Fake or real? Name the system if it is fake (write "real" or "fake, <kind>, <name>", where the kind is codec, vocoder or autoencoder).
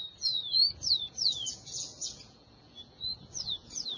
fake, vocoder, Vocos